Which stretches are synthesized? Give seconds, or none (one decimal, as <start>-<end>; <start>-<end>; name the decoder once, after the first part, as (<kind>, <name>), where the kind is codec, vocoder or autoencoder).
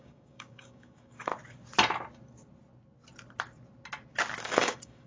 0.0-1.3 (codec, DAC); 4.4-5.1